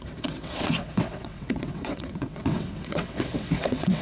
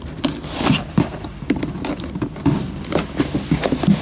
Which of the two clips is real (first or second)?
second